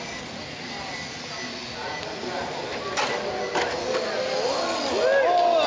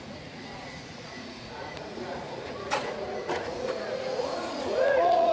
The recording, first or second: first